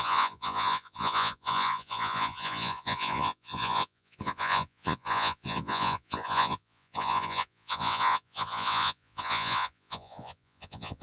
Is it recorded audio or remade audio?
remade